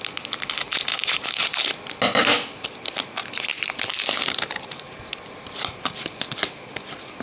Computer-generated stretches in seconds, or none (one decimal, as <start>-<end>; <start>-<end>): 0.9-1.6; 3.5-5.0